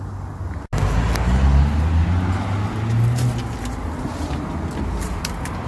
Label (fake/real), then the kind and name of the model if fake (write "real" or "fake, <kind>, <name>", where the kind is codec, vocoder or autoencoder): real